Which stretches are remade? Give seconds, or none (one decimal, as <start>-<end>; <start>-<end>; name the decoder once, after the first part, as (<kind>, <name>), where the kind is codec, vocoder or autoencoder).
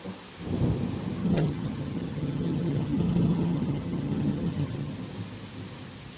1.2-4.9 (vocoder, HiFi-GAN)